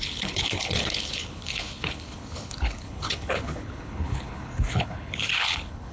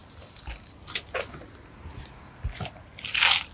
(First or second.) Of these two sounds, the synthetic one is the first